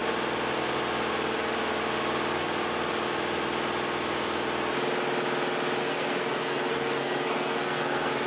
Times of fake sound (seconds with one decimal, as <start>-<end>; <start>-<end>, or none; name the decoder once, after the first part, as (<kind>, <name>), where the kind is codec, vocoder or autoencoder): 5.8-8.3 (codec, SNAC)